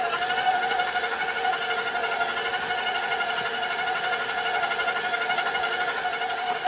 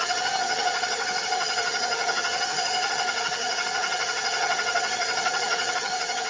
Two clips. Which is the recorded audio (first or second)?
first